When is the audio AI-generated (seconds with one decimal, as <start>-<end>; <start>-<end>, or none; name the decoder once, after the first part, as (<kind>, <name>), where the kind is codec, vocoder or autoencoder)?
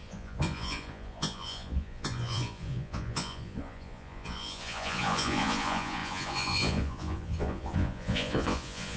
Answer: 0.0-9.0 (vocoder, Vocos)